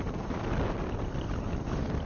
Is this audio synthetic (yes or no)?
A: no